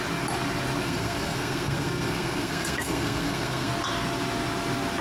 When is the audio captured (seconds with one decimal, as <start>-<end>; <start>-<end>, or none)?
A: 0.0-0.8; 3.7-5.0